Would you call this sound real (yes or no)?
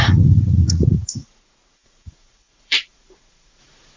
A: no